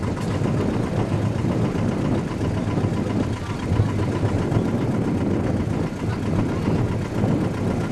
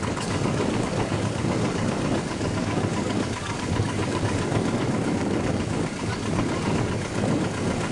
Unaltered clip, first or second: first